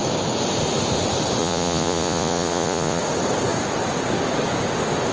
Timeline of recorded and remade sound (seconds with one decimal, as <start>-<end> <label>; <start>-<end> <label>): 0.0-1.4 recorded; 1.4-3.0 remade; 3.0-5.1 recorded